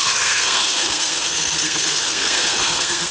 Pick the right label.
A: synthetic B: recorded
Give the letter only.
A